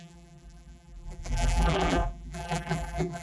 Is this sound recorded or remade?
remade